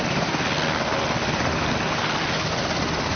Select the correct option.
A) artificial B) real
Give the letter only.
B